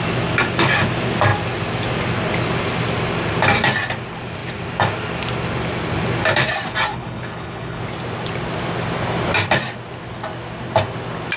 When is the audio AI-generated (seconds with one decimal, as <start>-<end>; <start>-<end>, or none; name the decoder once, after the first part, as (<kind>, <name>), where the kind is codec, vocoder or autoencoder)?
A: 6.9-7.8 (codec, HILCodec)